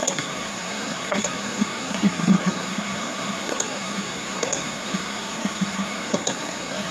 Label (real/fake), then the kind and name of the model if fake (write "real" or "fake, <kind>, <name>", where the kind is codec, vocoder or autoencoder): fake, codec, SNAC